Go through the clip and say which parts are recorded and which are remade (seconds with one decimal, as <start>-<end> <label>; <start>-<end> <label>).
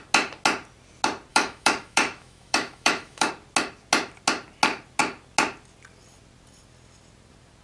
0.0-1.3 recorded; 1.3-3.3 remade; 3.3-7.6 recorded